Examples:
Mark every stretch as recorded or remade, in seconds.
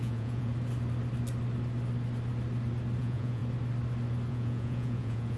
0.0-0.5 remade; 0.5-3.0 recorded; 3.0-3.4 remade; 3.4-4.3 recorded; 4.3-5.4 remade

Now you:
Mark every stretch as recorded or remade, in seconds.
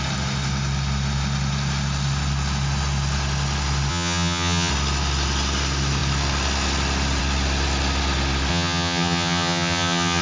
0.0-3.9 recorded; 3.9-4.7 remade; 4.7-8.5 recorded; 8.5-10.2 remade